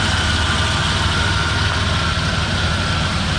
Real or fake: real